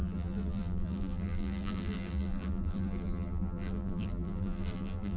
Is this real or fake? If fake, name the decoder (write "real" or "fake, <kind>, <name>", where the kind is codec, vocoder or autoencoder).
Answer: fake, vocoder, BigVGAN v2